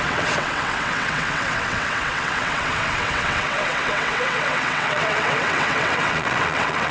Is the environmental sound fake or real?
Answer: fake